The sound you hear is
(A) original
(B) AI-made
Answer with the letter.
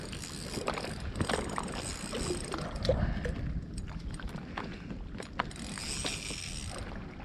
A